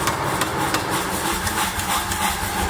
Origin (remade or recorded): remade